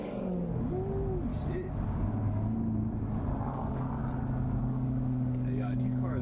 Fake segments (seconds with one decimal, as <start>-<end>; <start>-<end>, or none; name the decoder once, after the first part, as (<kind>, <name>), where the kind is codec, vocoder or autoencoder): 0.0-1.3 (codec, DAC); 3.4-4.0; 4.6-6.2